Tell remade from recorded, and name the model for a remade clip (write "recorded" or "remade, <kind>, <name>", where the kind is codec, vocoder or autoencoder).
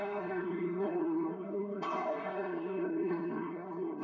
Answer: remade, codec, SNAC